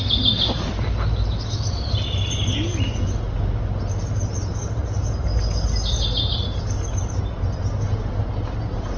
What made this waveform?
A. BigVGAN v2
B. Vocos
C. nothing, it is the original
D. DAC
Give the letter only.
C